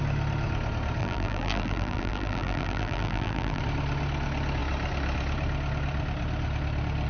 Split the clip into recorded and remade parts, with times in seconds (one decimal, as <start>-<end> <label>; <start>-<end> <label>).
0.0-1.0 recorded; 1.0-3.6 remade; 3.6-7.1 recorded